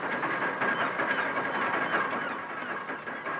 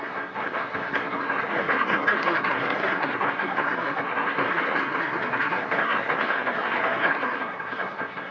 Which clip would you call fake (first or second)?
second